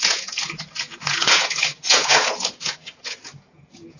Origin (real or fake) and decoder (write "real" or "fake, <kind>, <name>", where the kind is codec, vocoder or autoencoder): fake, vocoder, Vocos